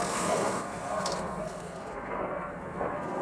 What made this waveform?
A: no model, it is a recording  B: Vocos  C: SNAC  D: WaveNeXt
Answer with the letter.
C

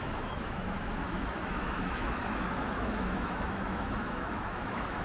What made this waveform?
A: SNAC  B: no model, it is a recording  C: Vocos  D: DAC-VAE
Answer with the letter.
D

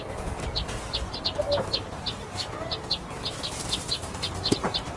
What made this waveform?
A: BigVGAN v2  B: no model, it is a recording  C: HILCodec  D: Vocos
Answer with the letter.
B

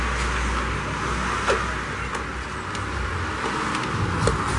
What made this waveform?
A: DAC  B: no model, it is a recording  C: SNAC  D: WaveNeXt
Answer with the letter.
B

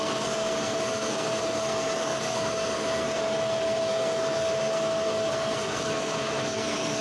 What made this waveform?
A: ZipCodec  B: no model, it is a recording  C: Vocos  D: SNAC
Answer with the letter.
D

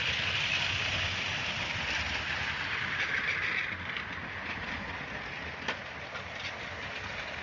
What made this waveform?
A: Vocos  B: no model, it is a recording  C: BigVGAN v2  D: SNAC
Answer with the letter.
B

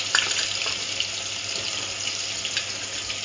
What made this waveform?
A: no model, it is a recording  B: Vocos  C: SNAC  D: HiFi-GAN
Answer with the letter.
A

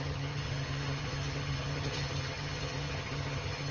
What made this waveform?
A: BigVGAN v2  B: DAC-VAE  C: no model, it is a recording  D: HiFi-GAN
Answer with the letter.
D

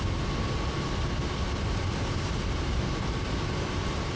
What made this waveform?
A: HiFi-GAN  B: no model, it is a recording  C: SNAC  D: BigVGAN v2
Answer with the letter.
B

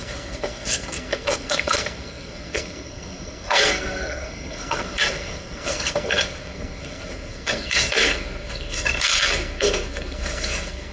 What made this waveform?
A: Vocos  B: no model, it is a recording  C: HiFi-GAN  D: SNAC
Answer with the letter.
D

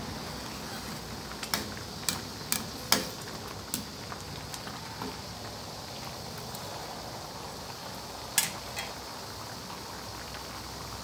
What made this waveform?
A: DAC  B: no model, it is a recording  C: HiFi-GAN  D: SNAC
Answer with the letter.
B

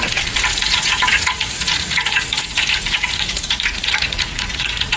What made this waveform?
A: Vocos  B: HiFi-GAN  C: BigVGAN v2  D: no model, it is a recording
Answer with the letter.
A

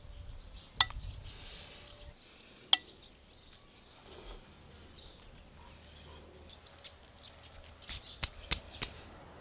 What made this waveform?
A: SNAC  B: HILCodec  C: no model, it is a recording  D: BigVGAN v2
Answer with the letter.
C